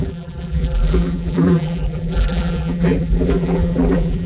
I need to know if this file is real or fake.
fake